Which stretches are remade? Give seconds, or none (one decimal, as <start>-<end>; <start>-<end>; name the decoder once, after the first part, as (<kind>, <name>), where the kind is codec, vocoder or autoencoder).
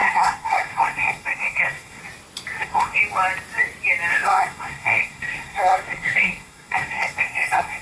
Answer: 0.0-2.0 (codec, SNAC); 2.6-3.0; 4.1-7.8